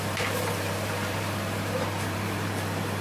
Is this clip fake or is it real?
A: fake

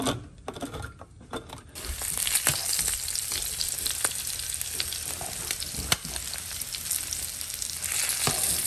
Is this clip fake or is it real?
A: real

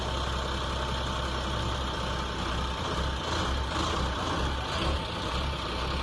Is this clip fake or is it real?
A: real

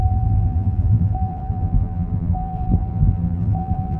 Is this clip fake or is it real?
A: fake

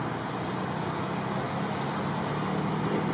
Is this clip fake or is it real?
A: real